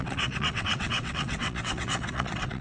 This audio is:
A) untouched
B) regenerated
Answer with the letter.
B